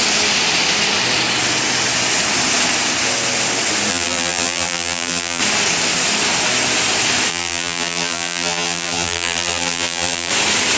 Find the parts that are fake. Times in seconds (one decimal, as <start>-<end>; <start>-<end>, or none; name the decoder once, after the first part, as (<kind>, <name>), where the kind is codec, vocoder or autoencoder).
3.9-5.4 (vocoder, BigVGAN v2); 7.3-10.3